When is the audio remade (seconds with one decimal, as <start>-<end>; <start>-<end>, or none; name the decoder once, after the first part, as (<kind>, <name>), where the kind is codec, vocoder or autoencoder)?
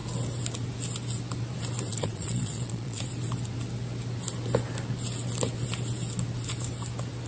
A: 1.9-3.0 (vocoder, Vocos)